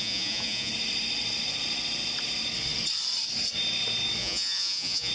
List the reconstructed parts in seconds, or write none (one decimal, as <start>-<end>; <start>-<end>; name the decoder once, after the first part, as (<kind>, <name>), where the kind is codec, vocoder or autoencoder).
0.0-0.7 (vocoder, Vocos); 4.2-5.1